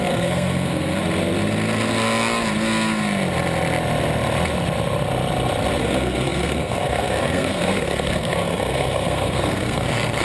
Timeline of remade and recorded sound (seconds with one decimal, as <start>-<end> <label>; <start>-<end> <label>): 0.0-1.0 remade; 1.0-5.8 recorded; 5.8-10.2 remade